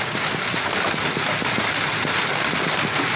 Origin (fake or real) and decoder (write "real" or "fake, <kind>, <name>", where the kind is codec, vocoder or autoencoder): real